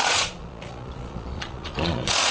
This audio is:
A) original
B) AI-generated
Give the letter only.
B